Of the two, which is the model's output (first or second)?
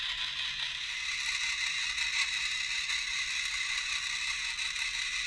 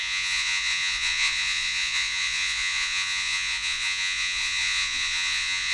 second